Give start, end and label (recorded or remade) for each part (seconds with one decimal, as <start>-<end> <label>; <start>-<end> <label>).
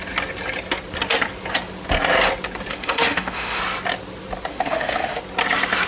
0.0-2.7 recorded; 2.7-3.6 remade; 3.6-4.5 recorded; 4.5-5.2 remade; 5.2-5.9 recorded